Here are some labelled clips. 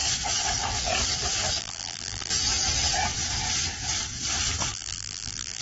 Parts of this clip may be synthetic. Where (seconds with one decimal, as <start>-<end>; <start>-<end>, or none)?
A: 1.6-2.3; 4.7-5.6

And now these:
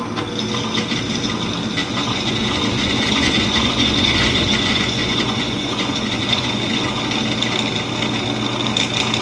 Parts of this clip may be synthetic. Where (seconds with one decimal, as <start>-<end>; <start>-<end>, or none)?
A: 1.8-7.0

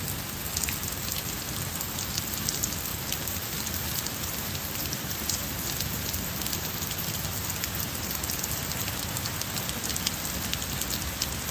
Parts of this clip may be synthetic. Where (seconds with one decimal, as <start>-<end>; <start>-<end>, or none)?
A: 2.9-5.3

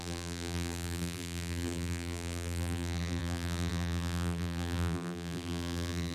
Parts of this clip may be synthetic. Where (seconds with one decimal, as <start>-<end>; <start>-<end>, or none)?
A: 0.0-6.1

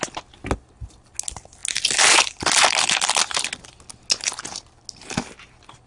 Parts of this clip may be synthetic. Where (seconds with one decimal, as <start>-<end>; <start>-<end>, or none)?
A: none

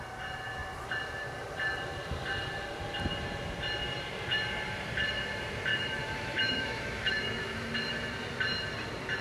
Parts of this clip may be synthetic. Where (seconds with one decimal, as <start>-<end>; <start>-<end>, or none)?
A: 5.7-7.8